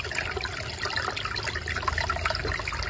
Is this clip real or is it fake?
real